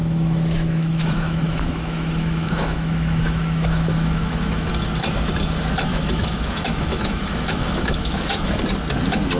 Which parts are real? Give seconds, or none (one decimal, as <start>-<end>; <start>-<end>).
4.7-5.9; 8.6-9.4